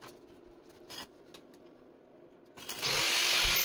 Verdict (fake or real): real